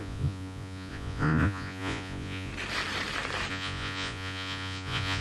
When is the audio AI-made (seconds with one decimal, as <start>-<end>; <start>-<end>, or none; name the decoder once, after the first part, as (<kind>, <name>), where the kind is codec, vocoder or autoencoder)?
0.0-2.5 (vocoder, Vocos); 3.5-5.2